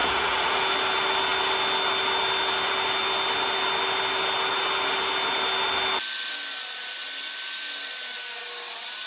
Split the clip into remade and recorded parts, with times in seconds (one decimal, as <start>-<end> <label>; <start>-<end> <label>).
0.0-0.6 remade; 0.6-9.1 recorded